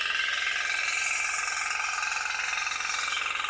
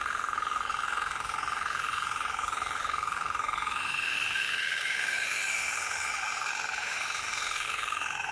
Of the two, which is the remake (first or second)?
second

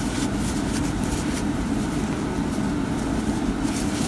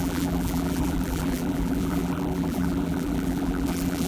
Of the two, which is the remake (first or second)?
second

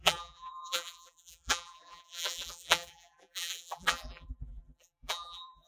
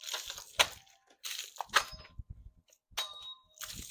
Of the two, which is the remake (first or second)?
first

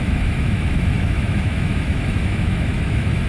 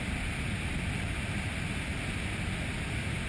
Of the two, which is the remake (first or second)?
first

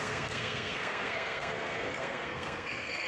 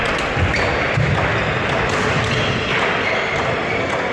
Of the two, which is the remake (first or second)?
first